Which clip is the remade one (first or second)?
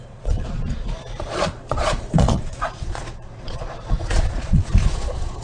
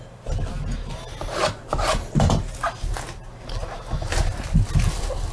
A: first